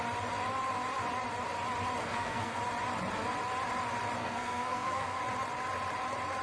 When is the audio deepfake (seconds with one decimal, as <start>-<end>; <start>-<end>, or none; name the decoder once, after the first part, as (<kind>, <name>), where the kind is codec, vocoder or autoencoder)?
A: 2.0-2.6 (codec, SNAC); 4.2-5.2